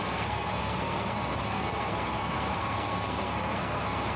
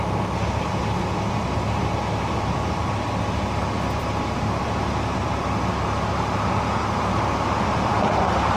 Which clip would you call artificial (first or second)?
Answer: first